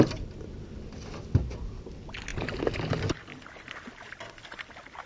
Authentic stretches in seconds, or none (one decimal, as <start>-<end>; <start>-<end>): 0.0-5.1